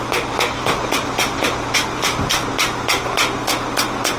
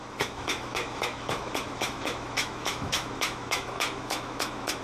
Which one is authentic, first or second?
first